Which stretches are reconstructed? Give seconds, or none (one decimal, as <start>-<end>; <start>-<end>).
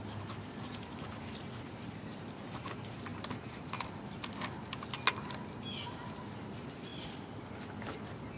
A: none